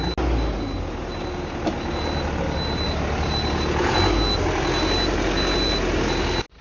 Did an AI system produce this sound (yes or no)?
no